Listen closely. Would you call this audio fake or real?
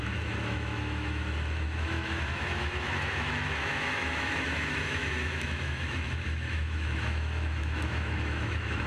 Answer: fake